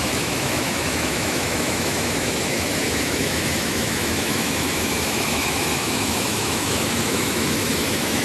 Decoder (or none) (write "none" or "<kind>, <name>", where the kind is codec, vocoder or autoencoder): autoencoder, DAC-VAE